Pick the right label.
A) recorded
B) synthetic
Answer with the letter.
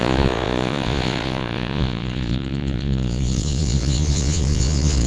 B